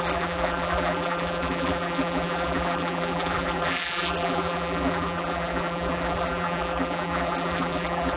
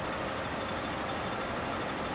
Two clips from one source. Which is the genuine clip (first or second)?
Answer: second